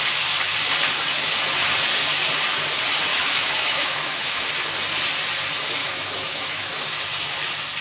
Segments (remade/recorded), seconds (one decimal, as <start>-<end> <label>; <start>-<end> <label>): 0.0-3.1 recorded; 3.1-4.5 remade; 4.5-5.8 recorded; 5.8-6.7 remade; 6.7-7.8 recorded

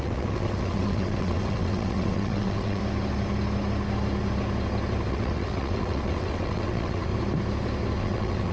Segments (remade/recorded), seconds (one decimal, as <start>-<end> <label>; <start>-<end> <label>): 0.0-2.8 remade; 2.8-5.1 recorded; 5.1-7.1 remade; 7.1-8.0 recorded; 8.0-8.5 remade

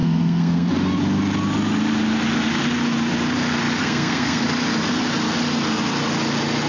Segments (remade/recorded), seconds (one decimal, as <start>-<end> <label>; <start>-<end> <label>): 0.0-0.7 remade; 0.7-3.8 recorded; 3.8-4.4 remade; 4.4-6.7 recorded

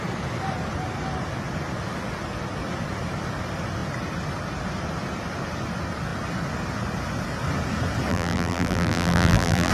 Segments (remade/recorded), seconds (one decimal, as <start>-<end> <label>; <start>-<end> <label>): 0.0-8.1 recorded; 8.1-9.7 remade

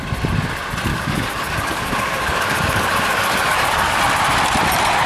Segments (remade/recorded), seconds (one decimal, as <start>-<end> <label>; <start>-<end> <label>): 0.0-0.9 recorded; 0.9-4.0 remade; 4.0-5.1 recorded

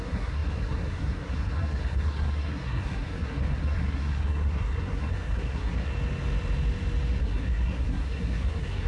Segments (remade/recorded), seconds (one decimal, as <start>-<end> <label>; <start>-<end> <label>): 0.0-5.9 remade; 5.9-7.2 recorded; 7.2-8.9 remade

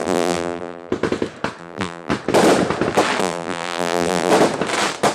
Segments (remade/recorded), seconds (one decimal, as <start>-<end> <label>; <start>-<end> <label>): 0.0-0.9 remade; 0.9-1.6 recorded; 1.6-2.1 remade; 2.1-3.2 recorded; 3.2-4.3 remade; 4.3-5.1 recorded